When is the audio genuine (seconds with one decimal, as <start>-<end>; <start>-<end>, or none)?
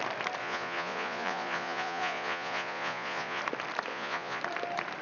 0.0-0.4; 3.4-3.9; 4.4-5.0